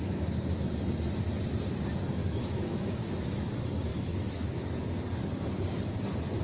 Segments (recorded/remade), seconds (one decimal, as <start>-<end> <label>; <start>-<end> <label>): 0.0-2.2 recorded; 2.2-3.5 remade; 3.5-3.9 recorded; 3.9-4.9 remade; 4.9-6.4 recorded